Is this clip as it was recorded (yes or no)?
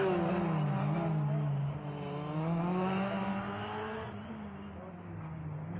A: yes